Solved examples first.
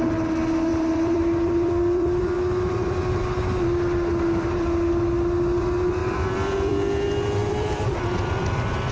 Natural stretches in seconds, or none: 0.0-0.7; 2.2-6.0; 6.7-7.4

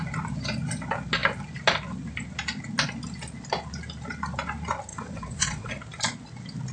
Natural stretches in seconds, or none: 0.0-4.9; 5.7-6.7

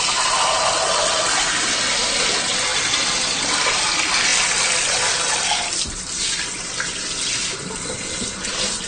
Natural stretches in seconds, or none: 0.0-8.9